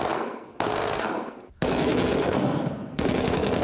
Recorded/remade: remade